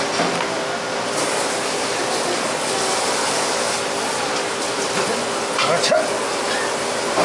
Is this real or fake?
real